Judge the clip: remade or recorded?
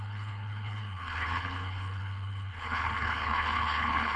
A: remade